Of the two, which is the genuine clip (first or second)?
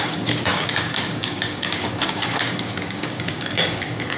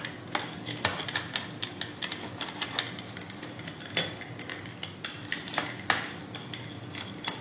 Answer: second